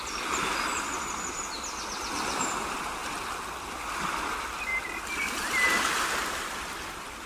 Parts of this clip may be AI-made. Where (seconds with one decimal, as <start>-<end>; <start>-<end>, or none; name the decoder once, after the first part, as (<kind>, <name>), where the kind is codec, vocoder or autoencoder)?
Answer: 0.0-3.0 (vocoder, BigVGAN v2); 4.0-4.7; 5.9-7.3